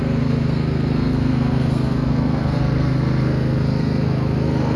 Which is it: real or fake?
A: fake